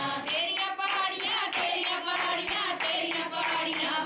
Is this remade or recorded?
recorded